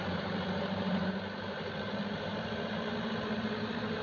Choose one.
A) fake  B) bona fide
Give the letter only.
A